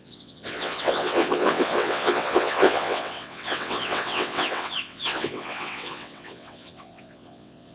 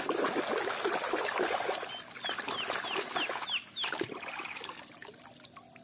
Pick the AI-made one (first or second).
first